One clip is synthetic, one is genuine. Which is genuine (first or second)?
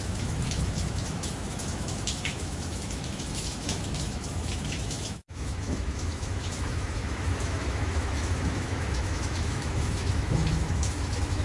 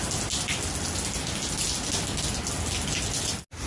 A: second